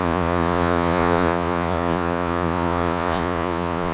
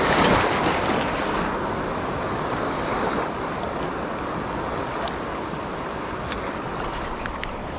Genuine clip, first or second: second